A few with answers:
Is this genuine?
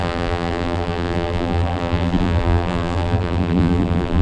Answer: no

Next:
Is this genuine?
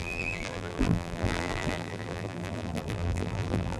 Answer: no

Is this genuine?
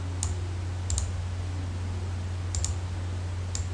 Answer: yes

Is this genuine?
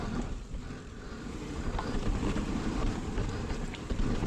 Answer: no